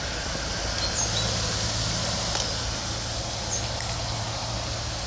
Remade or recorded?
recorded